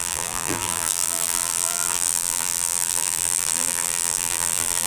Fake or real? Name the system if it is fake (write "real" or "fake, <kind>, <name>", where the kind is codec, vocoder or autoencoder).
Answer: fake, vocoder, BigVGAN v2